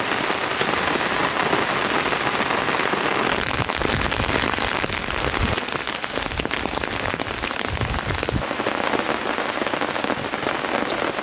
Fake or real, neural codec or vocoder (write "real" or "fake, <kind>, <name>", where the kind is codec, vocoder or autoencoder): real